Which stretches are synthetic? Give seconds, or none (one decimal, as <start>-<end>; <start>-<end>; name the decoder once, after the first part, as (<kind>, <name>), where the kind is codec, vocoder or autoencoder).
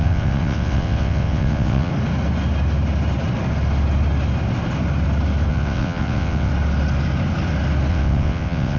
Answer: 0.0-1.9 (vocoder, WaveNeXt); 5.5-6.5; 7.9-8.8